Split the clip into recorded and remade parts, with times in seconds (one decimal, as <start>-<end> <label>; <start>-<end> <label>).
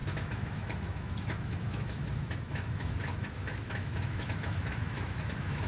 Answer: 0.0-5.7 remade